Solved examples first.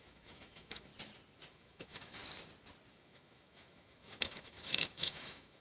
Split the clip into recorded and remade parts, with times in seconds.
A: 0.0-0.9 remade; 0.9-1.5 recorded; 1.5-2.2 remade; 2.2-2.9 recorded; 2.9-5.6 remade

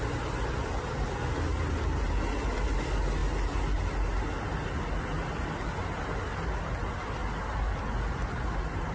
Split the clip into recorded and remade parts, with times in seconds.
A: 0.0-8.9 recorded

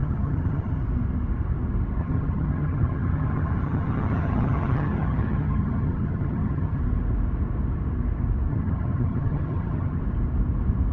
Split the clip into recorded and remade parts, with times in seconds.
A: 0.0-0.8 remade; 0.8-2.0 recorded; 2.0-6.8 remade; 6.8-8.5 recorded; 8.5-10.0 remade; 10.0-10.9 recorded

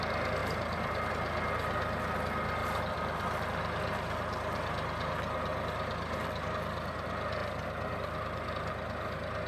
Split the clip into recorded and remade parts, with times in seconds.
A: 0.0-0.4 recorded; 0.4-1.1 remade; 1.1-2.6 recorded; 2.6-6.5 remade; 6.5-7.4 recorded; 7.4-8.5 remade; 8.5-9.5 recorded

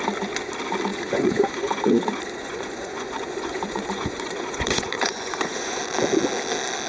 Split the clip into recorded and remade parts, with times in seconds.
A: 0.0-0.9 recorded; 0.9-1.9 remade; 1.9-2.4 recorded; 2.4-5.8 remade; 5.8-6.9 recorded